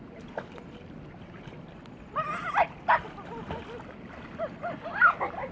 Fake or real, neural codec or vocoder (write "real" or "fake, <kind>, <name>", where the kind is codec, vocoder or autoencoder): real